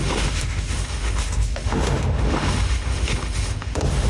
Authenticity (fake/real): fake